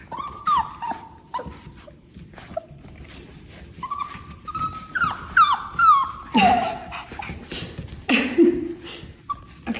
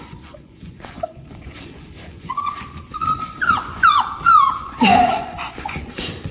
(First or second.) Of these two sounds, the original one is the first